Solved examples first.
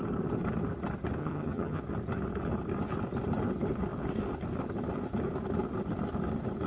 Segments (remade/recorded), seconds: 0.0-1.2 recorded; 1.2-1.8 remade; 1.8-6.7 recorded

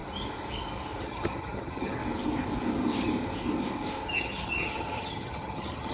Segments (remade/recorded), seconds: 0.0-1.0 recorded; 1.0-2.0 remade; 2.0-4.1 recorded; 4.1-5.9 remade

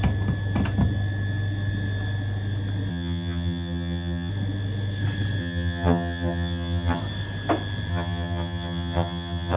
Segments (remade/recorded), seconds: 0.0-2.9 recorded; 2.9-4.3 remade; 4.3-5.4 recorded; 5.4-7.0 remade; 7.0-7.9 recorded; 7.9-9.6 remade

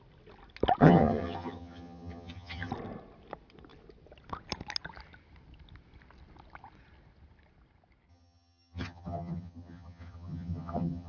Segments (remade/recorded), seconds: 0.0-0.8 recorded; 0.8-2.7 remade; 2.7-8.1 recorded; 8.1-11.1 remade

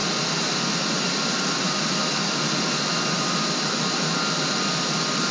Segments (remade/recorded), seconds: 0.0-5.3 recorded

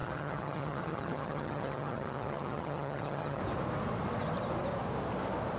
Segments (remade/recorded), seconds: 0.0-3.4 remade; 3.4-5.6 recorded

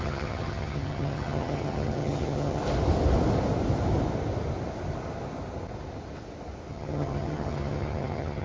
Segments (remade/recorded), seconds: 0.0-2.6 remade; 2.6-6.7 recorded; 6.7-8.4 remade